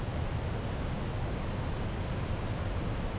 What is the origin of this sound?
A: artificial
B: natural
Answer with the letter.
B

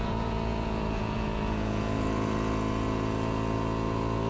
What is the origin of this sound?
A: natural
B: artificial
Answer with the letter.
B